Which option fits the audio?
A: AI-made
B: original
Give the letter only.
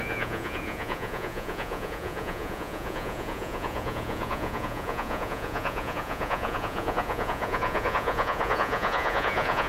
A